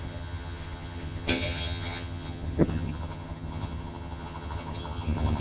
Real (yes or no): no